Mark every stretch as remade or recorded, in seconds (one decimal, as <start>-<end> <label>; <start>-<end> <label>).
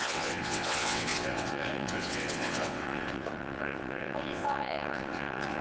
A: 0.0-5.6 remade